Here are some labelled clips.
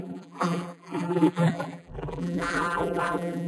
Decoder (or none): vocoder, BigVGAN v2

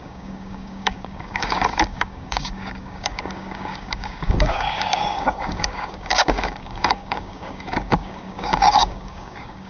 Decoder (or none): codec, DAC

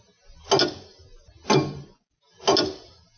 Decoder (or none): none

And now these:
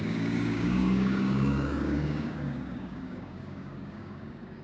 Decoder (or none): codec, DAC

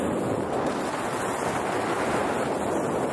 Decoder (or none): none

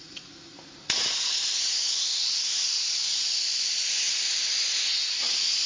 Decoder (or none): none